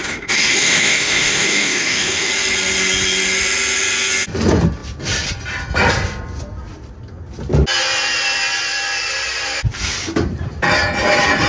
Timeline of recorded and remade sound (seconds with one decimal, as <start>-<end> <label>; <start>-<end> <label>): 0.0-2.3 remade; 2.3-11.5 recorded